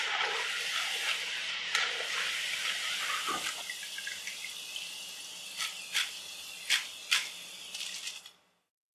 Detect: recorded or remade recorded